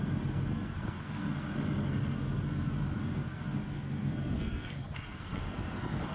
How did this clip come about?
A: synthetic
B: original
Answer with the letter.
A